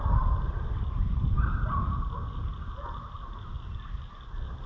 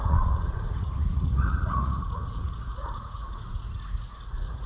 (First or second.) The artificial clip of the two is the second